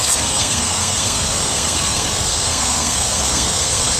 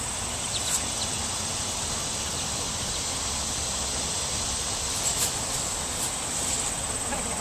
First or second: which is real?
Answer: second